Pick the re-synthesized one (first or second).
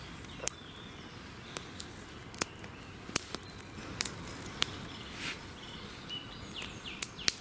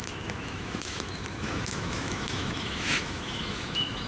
second